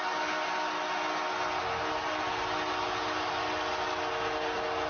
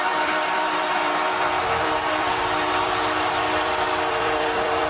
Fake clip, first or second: second